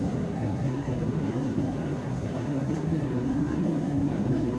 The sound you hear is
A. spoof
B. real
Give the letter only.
A